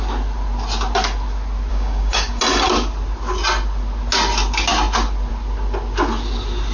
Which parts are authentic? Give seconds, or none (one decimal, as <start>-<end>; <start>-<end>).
0.0-1.7; 2.4-6.7